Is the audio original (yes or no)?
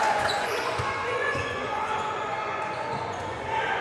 no